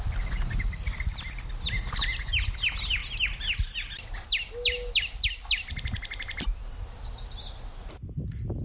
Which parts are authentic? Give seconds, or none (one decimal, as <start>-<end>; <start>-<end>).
0.0-8.6